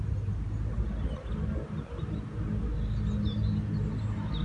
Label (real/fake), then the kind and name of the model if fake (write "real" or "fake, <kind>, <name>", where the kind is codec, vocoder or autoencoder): real